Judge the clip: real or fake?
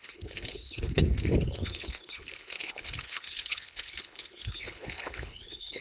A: fake